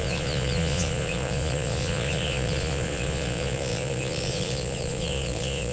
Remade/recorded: remade